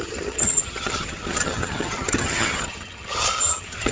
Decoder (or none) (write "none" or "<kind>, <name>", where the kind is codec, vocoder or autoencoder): vocoder, HiFi-GAN